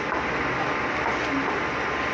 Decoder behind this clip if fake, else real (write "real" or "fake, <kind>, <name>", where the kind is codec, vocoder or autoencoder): real